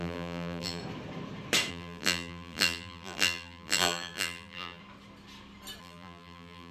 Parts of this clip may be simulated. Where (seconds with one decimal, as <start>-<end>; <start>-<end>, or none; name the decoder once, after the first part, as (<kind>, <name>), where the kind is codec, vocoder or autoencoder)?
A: 0.0-0.8 (vocoder, BigVGAN v2); 1.7-4.8; 5.8-6.7